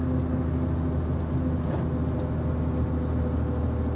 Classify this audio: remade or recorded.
recorded